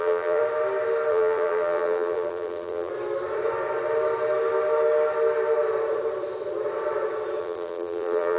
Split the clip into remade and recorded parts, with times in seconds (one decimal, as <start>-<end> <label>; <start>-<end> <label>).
0.0-0.4 remade; 0.4-1.1 recorded; 1.1-2.9 remade; 2.9-7.4 recorded; 7.4-8.4 remade